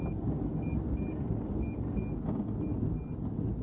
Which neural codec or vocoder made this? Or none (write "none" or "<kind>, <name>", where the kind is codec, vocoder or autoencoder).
none